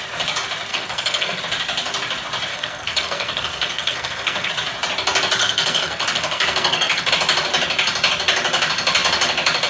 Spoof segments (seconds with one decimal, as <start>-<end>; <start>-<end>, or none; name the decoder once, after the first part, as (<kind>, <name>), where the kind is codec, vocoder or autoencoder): 0.7-1.4 (codec, SNAC); 2.5-4.5; 5.4-7.1